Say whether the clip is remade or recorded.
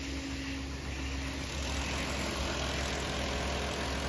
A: recorded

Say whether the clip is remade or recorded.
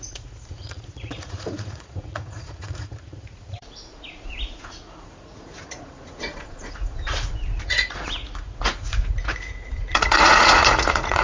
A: remade